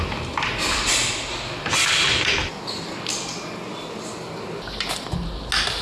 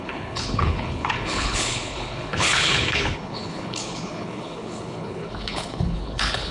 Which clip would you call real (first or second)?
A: first